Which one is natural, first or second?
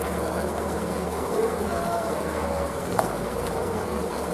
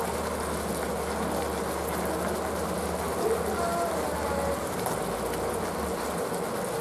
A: second